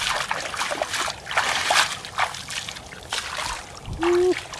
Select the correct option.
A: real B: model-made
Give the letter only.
A